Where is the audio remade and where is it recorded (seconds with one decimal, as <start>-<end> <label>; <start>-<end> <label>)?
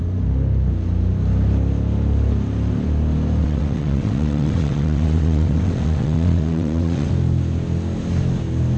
0.0-3.4 recorded; 3.4-7.1 remade; 7.1-8.8 recorded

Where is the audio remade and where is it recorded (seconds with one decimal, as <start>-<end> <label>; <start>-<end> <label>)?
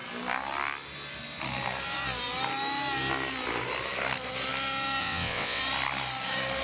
0.0-5.0 recorded; 5.0-5.6 remade; 5.6-6.6 recorded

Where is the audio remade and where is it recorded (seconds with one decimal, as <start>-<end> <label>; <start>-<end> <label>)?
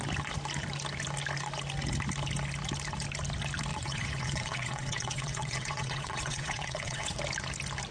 0.0-3.7 recorded; 3.7-7.2 remade; 7.2-7.9 recorded